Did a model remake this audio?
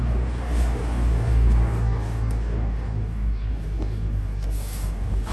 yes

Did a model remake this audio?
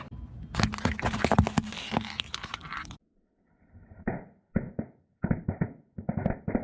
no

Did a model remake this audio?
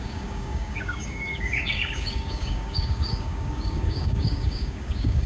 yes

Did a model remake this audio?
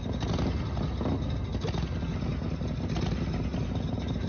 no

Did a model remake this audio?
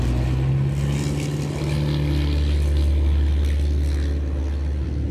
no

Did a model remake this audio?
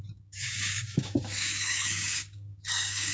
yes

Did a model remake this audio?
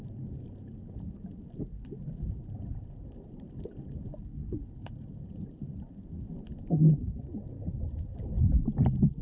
no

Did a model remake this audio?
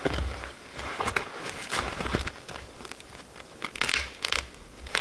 yes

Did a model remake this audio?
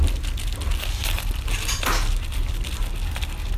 no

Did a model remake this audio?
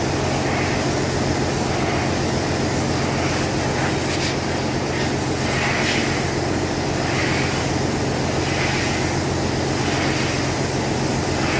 no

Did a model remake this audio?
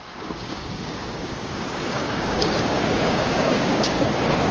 yes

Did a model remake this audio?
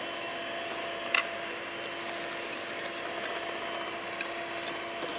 no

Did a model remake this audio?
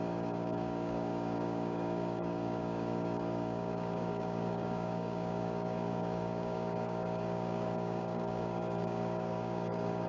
yes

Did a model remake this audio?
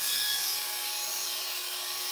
yes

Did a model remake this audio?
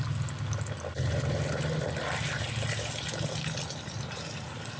no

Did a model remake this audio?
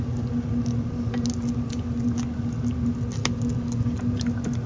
no